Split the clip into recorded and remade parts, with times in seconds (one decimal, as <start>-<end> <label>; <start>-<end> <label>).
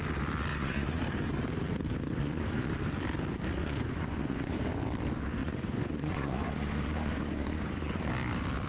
0.0-0.5 recorded; 0.5-1.0 remade; 1.0-2.2 recorded; 2.2-2.7 remade; 2.7-3.6 recorded; 3.6-4.5 remade; 4.5-5.4 recorded; 5.4-8.1 remade; 8.1-8.7 recorded